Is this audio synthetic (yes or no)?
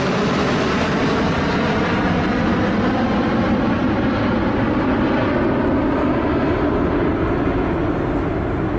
no